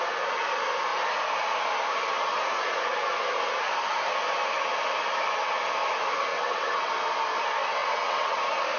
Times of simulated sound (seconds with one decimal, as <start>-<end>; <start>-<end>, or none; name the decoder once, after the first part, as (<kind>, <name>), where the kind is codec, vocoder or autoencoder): 6.3-6.9 (vocoder, WaveNeXt); 7.8-8.4